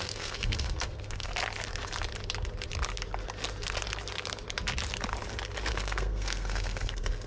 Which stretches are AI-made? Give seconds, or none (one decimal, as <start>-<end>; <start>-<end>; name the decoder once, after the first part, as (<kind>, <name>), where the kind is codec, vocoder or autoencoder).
0.0-1.3 (codec, SNAC); 5.7-7.3